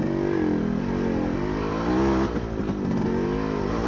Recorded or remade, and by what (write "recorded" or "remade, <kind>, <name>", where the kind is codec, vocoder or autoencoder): recorded